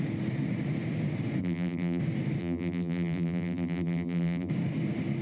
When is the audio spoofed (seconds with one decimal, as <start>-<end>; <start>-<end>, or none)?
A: 1.4-2.0; 2.4-4.5

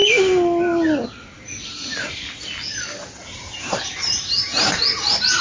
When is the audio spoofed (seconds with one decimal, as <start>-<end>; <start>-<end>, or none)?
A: 3.2-5.4

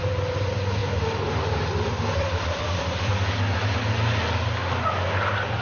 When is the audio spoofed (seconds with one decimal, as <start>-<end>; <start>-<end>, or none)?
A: 0.8-3.1

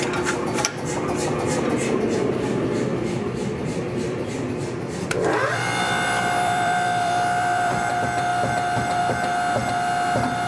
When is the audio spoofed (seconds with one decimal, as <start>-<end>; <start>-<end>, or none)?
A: 2.9-7.9